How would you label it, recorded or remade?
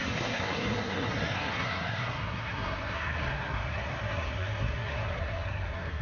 remade